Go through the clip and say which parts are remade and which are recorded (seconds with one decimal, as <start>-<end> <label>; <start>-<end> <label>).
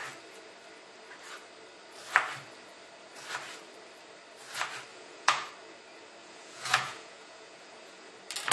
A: 0.0-4.9 recorded; 4.9-5.5 remade; 5.5-6.2 recorded; 6.2-8.1 remade; 8.1-8.5 recorded